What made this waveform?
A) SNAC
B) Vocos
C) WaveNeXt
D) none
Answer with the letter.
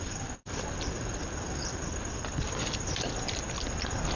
D